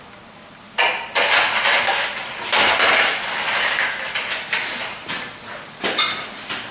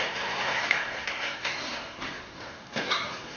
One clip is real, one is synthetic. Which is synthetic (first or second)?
second